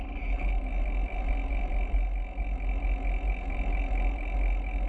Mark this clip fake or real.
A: real